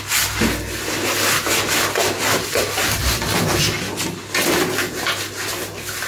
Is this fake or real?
real